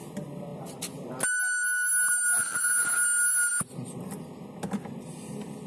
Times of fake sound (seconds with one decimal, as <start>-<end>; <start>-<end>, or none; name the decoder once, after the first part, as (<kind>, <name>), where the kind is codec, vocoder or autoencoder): none